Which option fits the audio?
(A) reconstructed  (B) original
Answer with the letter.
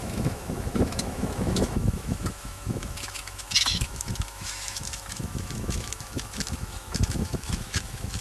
A